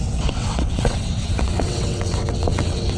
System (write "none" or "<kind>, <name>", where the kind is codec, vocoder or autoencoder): vocoder, WaveNeXt